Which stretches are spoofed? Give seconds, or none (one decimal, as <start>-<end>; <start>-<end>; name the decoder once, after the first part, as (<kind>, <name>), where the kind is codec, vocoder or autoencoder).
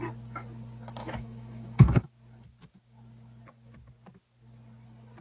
1.0-2.1 (autoencoder, DAC-VAE)